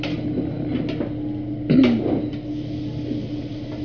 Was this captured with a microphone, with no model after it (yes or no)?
yes